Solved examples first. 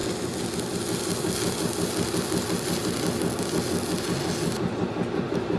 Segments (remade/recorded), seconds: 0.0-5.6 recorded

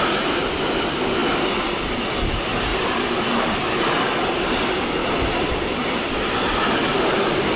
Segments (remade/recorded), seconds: 0.0-2.7 recorded; 2.7-4.3 remade; 4.3-5.0 recorded; 5.0-6.0 remade; 6.0-6.8 recorded; 6.8-7.6 remade

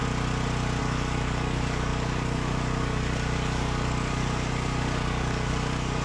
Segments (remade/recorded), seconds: 0.0-0.8 recorded; 0.8-6.0 remade

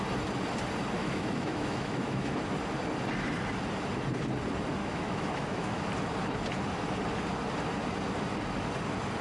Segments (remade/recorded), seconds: 0.0-1.0 recorded; 1.0-2.4 remade; 2.4-4.8 recorded; 4.8-5.8 remade; 5.8-9.2 recorded

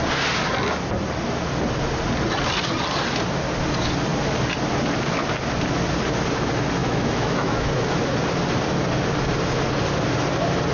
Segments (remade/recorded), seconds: 0.0-6.8 recorded; 6.8-8.0 remade; 8.0-10.7 recorded

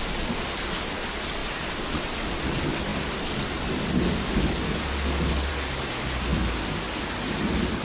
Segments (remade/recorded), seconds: 0.0-7.8 recorded

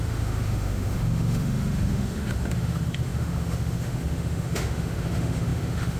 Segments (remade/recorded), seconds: 0.0-6.0 remade